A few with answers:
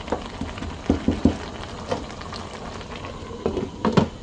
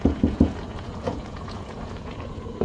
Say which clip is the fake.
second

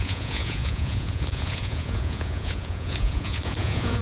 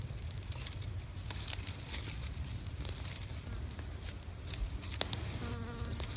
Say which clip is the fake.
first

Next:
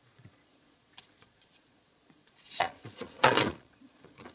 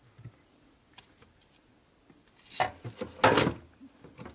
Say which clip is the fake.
first